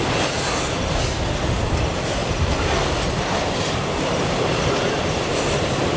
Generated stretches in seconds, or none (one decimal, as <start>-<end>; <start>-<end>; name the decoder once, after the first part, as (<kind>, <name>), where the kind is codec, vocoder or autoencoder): none

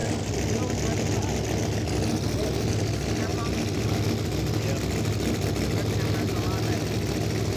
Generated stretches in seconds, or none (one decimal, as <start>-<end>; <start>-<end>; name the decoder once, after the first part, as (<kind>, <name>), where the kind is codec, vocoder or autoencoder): none

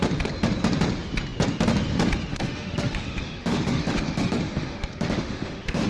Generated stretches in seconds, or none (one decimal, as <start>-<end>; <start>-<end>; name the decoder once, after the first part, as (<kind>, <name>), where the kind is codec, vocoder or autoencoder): 2.3-5.9 (autoencoder, DAC-VAE)

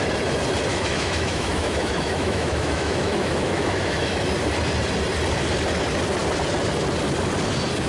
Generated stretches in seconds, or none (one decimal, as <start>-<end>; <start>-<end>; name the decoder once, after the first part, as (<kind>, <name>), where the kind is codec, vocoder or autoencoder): 0.7-4.2 (autoencoder, DAC-VAE)

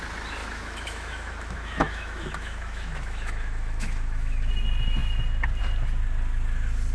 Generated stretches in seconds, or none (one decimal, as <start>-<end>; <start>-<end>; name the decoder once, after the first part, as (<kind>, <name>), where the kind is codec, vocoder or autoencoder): 0.4-4.5 (autoencoder, DAC-VAE)

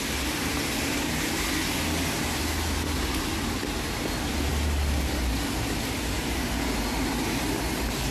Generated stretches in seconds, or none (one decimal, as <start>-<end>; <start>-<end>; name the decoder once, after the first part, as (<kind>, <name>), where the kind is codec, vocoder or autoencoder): none

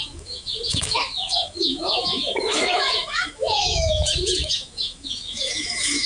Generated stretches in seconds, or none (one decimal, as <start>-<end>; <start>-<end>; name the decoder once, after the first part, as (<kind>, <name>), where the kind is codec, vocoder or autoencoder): 0.0-6.1 (autoencoder, DAC-VAE)

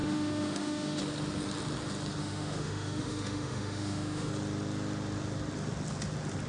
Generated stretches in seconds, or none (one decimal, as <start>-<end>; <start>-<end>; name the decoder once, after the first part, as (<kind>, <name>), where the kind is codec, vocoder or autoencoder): 0.0-1.0 (autoencoder, DAC-VAE); 2.2-4.3